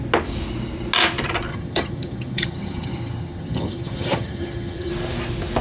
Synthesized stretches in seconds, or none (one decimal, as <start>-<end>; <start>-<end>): 1.5-4.9